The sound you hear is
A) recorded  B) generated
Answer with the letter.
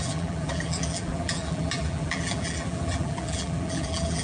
B